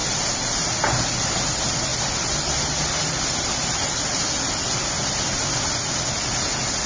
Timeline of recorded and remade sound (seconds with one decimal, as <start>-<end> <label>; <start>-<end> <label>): 0.0-6.9 recorded